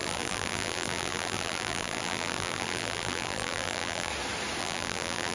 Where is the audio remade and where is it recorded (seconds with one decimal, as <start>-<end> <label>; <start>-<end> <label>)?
0.0-4.1 remade; 4.1-4.6 recorded; 4.6-5.3 remade